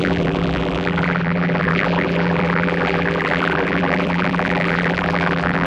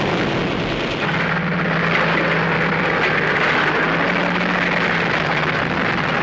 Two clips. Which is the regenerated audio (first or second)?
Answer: first